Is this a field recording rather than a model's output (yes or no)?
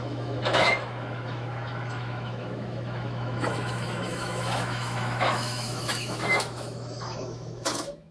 no